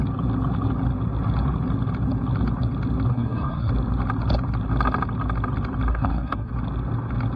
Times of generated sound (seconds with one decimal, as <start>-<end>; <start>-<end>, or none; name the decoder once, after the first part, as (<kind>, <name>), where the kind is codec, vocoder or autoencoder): 3.1-3.7 (codec, SNAC); 5.9-6.5